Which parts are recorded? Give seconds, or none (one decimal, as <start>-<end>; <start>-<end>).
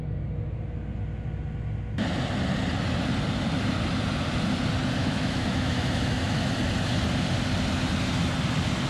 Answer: 0.0-5.0; 6.5-8.9